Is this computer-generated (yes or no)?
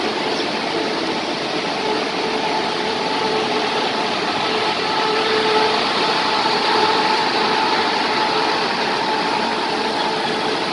yes